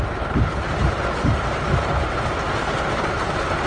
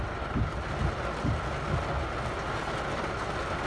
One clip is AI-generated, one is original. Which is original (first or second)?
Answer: second